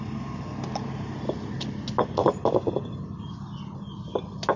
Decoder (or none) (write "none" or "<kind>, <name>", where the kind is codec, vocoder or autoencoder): none